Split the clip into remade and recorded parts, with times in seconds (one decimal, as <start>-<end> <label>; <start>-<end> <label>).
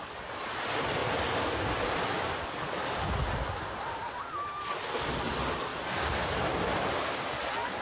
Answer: 0.0-7.8 recorded